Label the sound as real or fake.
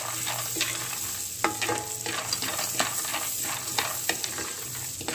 real